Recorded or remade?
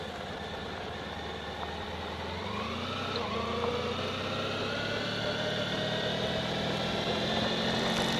recorded